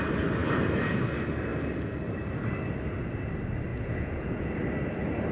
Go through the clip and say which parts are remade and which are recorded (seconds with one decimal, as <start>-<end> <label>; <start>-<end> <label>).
0.0-3.7 recorded; 3.7-4.5 remade; 4.5-5.3 recorded